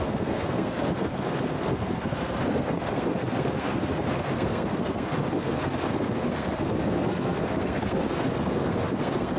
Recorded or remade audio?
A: remade